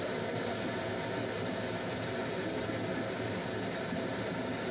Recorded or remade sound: recorded